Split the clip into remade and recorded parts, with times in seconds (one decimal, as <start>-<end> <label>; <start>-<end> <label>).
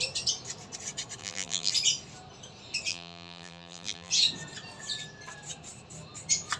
0.0-1.2 recorded; 1.2-1.7 remade; 1.7-2.9 recorded; 2.9-4.1 remade; 4.1-6.6 recorded